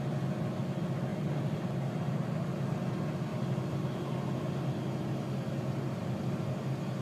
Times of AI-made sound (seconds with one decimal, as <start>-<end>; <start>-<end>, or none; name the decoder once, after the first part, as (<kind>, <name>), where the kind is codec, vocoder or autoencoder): none